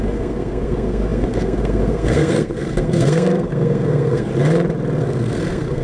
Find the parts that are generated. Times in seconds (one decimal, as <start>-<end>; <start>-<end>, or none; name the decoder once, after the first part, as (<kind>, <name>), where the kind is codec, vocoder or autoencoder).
0.0-4.3 (codec, SNAC); 5.0-5.8